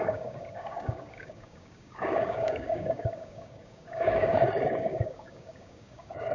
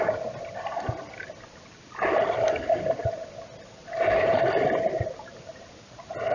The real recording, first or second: second